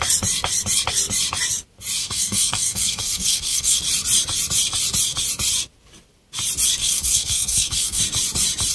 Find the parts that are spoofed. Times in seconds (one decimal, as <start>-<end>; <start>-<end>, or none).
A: 2.0-3.8; 6.8-8.0